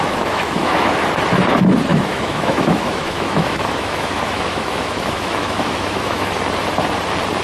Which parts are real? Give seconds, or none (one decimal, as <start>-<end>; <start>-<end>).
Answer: 1.0-1.9; 6.3-7.4